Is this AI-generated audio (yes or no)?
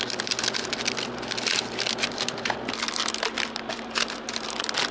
no